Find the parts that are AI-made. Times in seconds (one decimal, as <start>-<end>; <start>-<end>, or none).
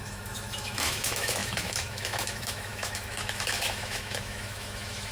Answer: 0.0-5.1